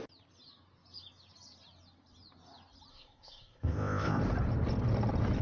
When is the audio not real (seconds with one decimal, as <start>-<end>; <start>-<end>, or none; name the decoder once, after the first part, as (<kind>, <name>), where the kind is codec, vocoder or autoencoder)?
2.9-4.2 (codec, ZipCodec)